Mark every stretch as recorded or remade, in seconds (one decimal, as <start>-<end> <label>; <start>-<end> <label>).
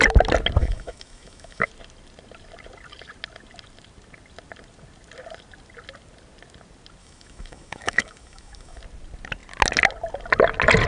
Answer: 0.0-0.6 recorded; 0.6-1.7 remade; 1.7-7.0 recorded; 7.0-8.8 remade; 8.8-10.9 recorded